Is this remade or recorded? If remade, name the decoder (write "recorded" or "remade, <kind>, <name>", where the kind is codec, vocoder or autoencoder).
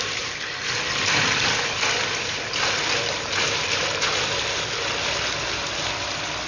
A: recorded